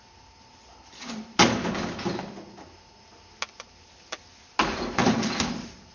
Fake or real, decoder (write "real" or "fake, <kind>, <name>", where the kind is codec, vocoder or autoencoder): real